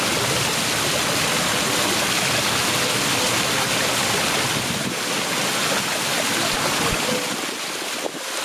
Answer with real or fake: real